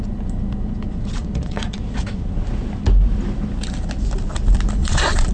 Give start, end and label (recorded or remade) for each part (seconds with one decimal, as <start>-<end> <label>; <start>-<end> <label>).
0.0-1.2 recorded; 1.2-1.8 remade; 1.8-4.8 recorded; 4.8-5.3 remade